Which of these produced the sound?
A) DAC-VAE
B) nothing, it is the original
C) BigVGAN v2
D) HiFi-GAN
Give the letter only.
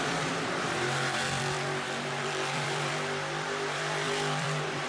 C